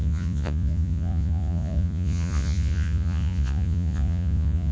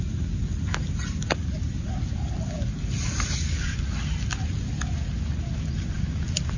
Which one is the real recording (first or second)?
second